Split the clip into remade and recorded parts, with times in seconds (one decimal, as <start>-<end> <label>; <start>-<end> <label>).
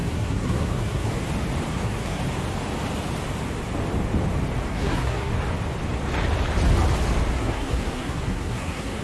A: 0.0-1.1 remade; 1.1-1.7 recorded; 1.7-2.2 remade; 2.2-4.7 recorded; 4.7-5.3 remade; 5.3-7.3 recorded; 7.3-9.0 remade